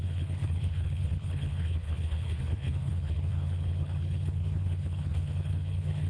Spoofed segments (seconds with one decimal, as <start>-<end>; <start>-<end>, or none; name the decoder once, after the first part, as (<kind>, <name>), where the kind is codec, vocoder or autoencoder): 0.0-6.1 (codec, HILCodec)